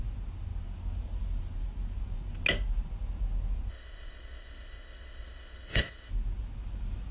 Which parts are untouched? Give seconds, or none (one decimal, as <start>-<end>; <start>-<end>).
0.0-3.7; 6.1-7.1